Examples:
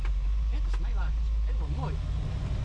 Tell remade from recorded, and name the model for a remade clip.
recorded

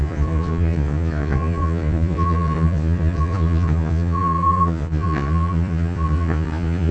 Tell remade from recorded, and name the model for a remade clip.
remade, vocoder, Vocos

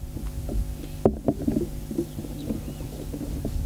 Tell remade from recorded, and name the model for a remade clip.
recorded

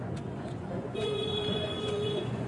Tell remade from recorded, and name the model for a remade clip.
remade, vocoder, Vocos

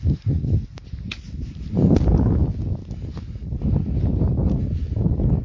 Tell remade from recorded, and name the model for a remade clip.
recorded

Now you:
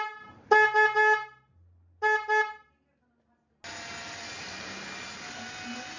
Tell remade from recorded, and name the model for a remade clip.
recorded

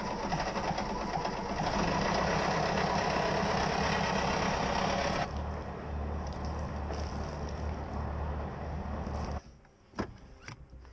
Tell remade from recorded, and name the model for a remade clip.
recorded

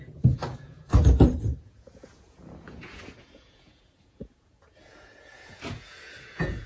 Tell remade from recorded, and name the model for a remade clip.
remade, vocoder, Vocos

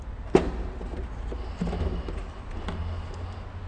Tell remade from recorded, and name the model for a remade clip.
recorded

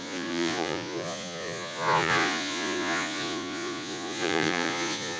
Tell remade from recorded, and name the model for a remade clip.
remade, vocoder, Vocos